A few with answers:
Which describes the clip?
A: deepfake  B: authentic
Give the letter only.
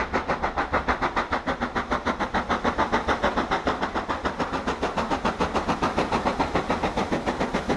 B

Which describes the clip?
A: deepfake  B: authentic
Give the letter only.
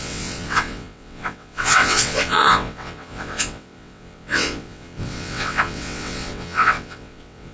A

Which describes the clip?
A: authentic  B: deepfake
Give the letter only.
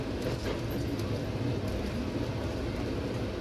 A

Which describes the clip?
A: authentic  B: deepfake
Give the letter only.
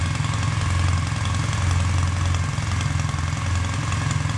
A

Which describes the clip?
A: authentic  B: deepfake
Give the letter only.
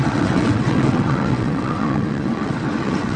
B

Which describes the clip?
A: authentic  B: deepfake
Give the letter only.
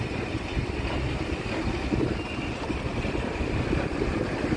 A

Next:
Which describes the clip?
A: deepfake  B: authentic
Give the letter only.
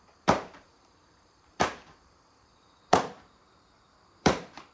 A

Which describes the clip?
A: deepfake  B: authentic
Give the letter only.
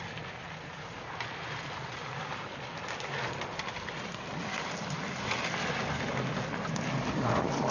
B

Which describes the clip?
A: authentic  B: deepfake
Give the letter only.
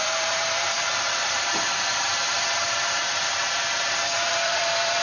B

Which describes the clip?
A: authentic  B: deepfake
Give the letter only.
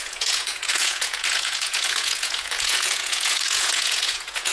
B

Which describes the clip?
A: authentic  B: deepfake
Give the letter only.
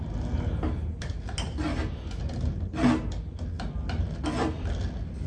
A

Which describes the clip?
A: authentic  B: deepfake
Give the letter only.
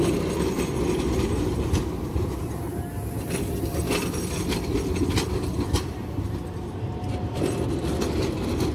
A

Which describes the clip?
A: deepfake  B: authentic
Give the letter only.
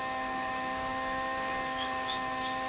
A